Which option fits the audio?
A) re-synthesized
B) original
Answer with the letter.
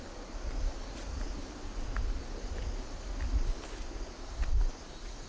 B